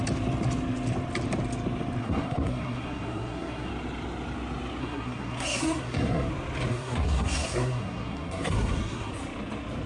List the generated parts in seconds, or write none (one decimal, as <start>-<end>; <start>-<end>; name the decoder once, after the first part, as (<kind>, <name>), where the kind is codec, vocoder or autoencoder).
2.0-3.7 (codec, SNAC); 4.8-6.3; 6.7-9.1